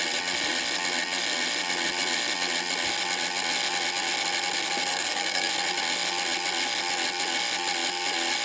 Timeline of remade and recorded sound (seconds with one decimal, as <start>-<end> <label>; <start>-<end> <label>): 0.0-4.9 recorded; 4.9-5.5 remade; 5.5-8.4 recorded